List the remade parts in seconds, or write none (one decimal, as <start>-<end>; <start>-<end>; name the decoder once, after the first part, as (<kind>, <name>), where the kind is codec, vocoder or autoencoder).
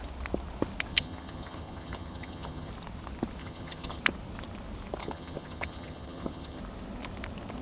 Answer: 0.9-2.7 (vocoder, HiFi-GAN); 3.4-4.0; 5.0-6.6